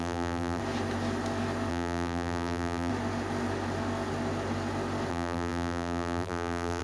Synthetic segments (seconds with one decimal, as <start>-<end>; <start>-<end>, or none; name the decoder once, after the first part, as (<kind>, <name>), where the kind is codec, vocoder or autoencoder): 0.0-0.6 (vocoder, BigVGAN v2); 1.7-2.9; 5.1-6.8